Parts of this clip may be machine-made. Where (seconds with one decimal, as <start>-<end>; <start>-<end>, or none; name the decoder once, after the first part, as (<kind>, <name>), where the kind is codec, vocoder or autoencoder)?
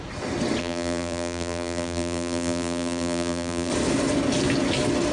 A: 0.6-3.7 (vocoder, BigVGAN v2)